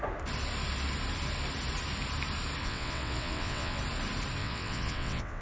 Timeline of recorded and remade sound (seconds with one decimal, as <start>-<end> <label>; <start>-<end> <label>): 0.0-2.6 recorded; 2.6-3.8 remade; 3.8-4.4 recorded; 4.4-5.4 remade